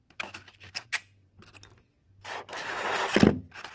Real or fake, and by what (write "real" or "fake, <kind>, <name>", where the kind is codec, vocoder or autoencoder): real